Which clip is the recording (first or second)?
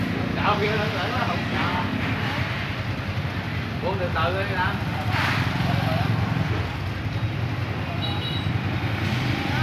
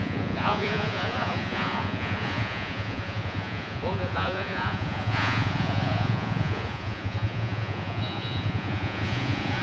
first